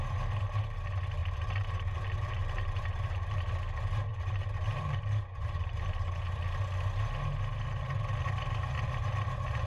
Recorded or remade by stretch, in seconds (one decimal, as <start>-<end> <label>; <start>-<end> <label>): 0.0-1.2 recorded; 1.2-3.4 remade; 3.4-4.1 recorded; 4.1-6.4 remade; 6.4-9.7 recorded